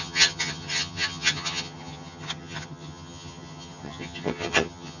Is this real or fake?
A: fake